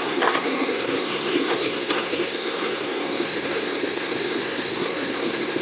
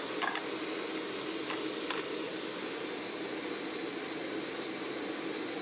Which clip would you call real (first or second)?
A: second